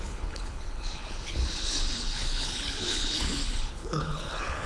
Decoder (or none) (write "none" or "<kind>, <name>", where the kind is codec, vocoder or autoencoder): codec, HILCodec